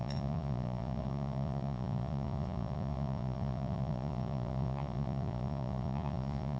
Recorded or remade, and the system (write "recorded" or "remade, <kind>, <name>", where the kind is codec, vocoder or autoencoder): remade, vocoder, Vocos